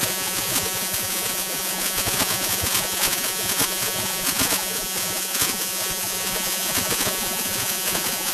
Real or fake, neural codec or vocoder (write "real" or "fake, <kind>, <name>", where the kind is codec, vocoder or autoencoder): fake, vocoder, Vocos